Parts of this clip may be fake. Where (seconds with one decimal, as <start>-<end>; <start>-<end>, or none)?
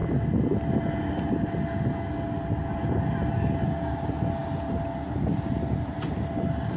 none